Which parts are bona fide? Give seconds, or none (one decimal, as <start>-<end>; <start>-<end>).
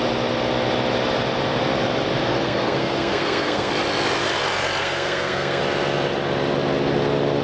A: 0.0-2.3; 3.7-4.8; 5.6-7.4